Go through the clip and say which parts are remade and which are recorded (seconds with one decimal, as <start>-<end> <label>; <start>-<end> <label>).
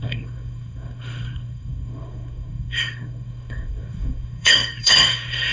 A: 0.0-5.5 remade